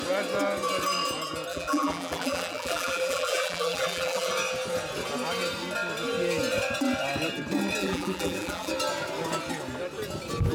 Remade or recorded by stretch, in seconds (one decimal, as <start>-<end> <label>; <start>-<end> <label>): 0.0-1.5 recorded; 1.5-4.3 remade; 4.3-7.8 recorded; 7.8-8.7 remade; 8.7-10.5 recorded